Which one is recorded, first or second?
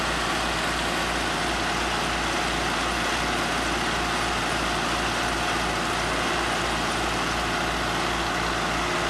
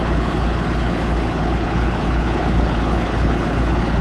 first